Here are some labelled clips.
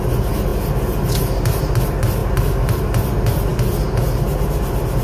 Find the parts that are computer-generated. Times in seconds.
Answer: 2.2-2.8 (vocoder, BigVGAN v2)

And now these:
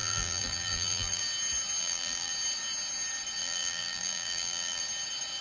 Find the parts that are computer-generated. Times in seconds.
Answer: 0.0-1.2 (vocoder, BigVGAN v2); 1.8-2.3; 3.4-4.8

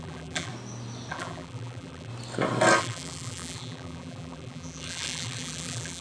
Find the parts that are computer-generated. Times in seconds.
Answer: 0.0-0.5 (vocoder, BigVGAN v2); 1.1-2.1; 2.8-6.0

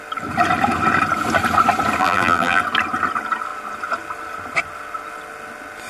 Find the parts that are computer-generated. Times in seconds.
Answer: 2.0-2.6 (vocoder, BigVGAN v2)

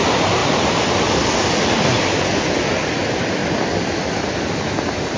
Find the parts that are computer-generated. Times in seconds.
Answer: 0.4-1.3 (vocoder, BigVGAN v2)

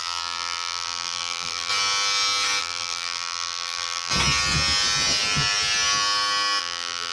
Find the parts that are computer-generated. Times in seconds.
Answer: 0.0-1.7 (vocoder, BigVGAN v2); 2.6-4.1; 6.6-7.1

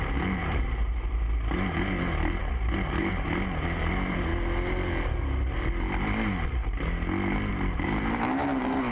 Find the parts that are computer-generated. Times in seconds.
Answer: 0.0-2.4 (vocoder, BigVGAN v2); 3.0-4.3; 7.5-8.9

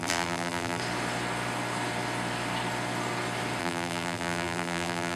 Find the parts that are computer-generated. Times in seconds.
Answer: 0.0-0.8 (vocoder, BigVGAN v2); 3.6-5.2